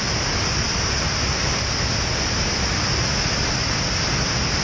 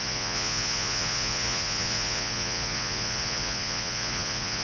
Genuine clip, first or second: first